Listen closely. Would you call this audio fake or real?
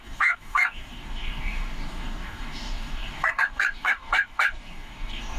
fake